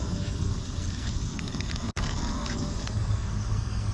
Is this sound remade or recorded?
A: remade